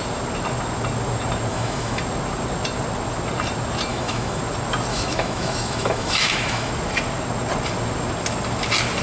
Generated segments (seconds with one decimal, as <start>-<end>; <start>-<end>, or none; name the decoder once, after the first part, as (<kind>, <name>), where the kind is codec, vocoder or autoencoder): 1.5-2.0 (autoencoder, DAC-VAE); 3.9-4.4; 4.9-6.7